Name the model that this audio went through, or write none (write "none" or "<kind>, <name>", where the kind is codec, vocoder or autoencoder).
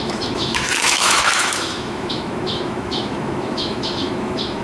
autoencoder, DAC-VAE